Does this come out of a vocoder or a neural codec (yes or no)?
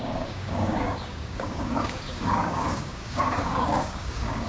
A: yes